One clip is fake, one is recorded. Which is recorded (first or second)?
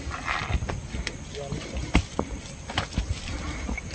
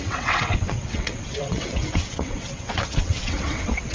first